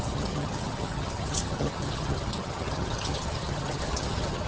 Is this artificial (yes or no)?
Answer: yes